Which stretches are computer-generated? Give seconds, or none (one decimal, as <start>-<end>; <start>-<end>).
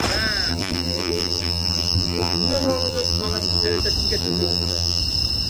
0.5-3.8; 4.2-5.0